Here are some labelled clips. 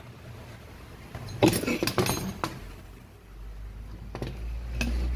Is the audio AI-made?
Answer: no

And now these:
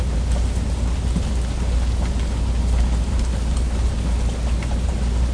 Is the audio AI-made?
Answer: no